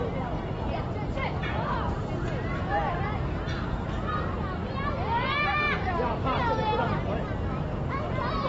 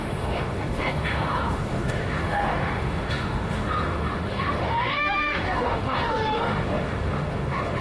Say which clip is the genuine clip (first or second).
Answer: first